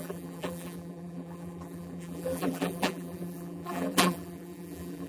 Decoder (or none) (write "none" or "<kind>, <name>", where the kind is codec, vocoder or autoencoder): vocoder, BigVGAN v2